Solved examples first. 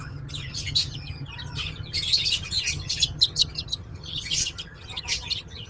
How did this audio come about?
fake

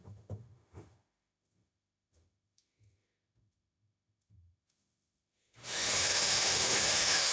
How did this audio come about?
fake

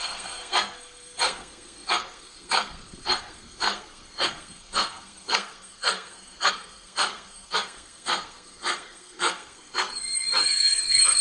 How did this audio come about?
fake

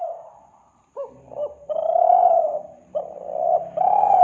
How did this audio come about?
fake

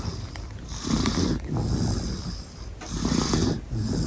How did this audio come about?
real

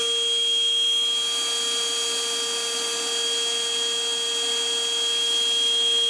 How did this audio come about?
real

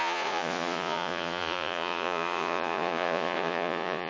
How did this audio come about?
fake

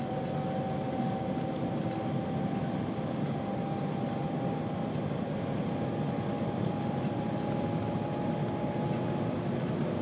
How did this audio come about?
real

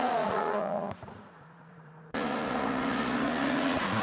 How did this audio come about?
fake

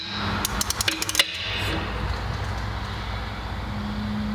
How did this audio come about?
real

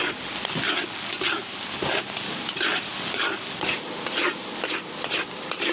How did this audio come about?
real